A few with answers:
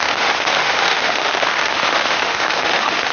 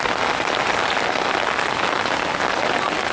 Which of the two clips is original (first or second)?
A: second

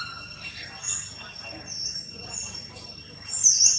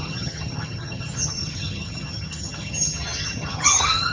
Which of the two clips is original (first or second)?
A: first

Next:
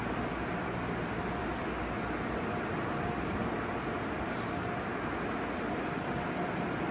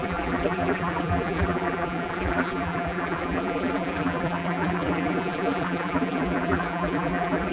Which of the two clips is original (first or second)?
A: first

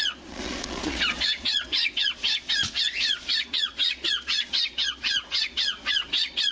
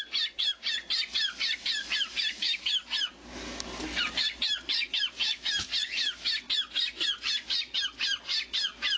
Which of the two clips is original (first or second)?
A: second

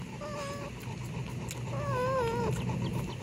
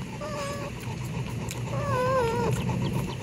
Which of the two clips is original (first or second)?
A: first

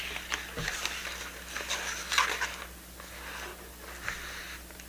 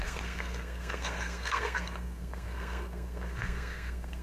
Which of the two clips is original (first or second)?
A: first